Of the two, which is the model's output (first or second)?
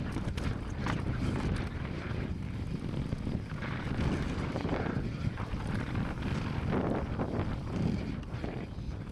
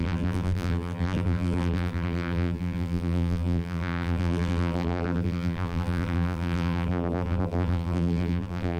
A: second